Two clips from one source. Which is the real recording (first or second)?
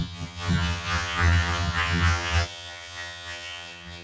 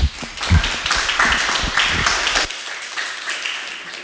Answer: second